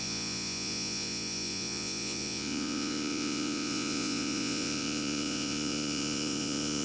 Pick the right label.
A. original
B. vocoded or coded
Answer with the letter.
B